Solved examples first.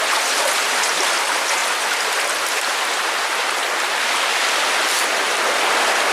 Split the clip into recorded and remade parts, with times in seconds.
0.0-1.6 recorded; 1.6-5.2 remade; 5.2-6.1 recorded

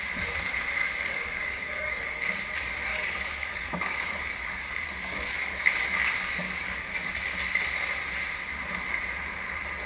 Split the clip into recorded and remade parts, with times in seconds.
0.0-0.8 recorded; 0.8-2.3 remade; 2.3-2.9 recorded; 2.9-7.1 remade; 7.1-9.9 recorded

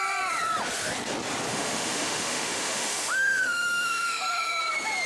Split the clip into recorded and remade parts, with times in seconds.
0.0-1.5 recorded; 1.5-4.6 remade; 4.6-5.1 recorded

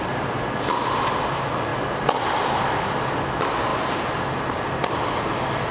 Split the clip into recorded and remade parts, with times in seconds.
0.0-3.7 recorded; 3.7-5.3 remade; 5.3-5.7 recorded

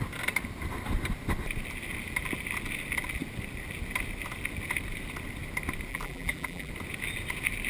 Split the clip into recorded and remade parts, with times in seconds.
0.0-5.9 recorded; 5.9-6.7 remade; 6.7-7.7 recorded

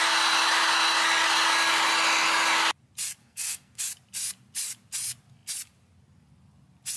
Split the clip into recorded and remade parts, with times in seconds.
0.0-3.2 recorded; 3.2-3.8 remade; 3.8-7.0 recorded

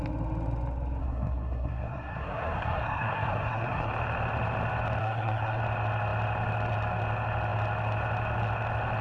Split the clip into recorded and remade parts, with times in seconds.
0.0-1.0 recorded; 1.0-3.9 remade; 3.9-5.0 recorded; 5.0-5.6 remade; 5.6-9.0 recorded